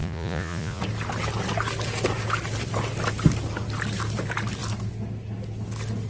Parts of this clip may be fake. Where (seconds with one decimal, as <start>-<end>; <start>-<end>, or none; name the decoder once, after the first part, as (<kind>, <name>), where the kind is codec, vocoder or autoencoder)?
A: 0.0-0.8 (vocoder, Vocos)